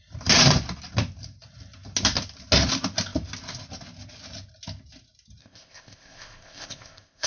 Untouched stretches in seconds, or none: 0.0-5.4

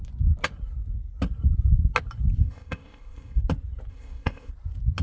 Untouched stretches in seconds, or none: 0.0-2.4; 3.4-3.9; 4.5-5.0

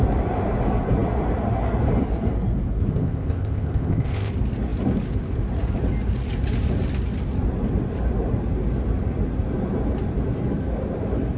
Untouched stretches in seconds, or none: 0.0-2.9; 4.3-11.4

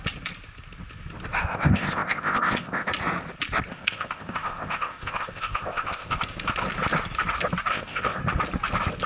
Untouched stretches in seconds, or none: 0.0-1.4; 2.9-3.7; 6.1-7.7; 8.2-9.1

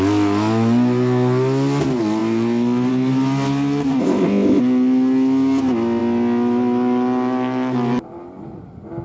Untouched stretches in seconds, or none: 0.0-4.0; 4.6-9.0

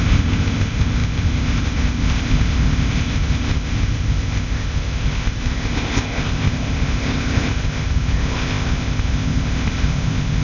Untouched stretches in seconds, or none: none

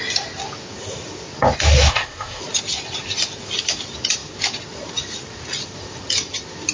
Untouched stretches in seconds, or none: 0.0-1.9; 2.4-6.7